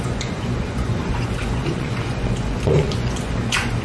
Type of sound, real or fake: fake